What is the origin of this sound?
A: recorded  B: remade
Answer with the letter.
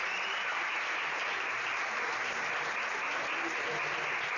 A